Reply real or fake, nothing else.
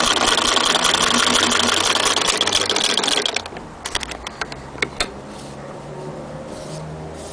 real